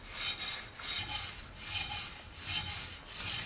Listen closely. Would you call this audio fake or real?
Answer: real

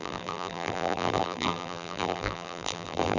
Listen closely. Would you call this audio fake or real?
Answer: fake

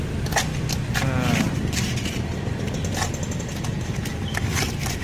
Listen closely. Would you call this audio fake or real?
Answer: real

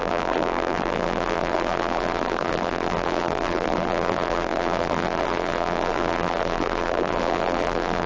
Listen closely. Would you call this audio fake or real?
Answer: fake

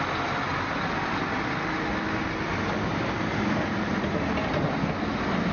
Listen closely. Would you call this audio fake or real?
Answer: real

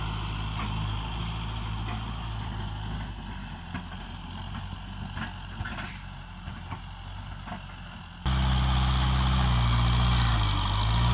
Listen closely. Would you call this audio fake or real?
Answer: real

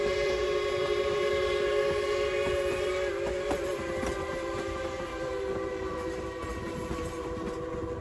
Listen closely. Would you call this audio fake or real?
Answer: fake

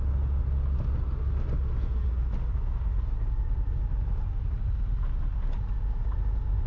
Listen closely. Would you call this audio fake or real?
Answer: real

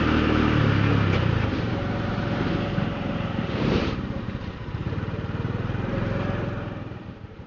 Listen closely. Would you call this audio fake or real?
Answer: fake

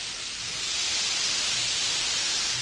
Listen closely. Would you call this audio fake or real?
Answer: real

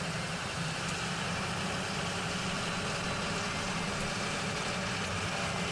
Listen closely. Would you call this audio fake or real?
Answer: real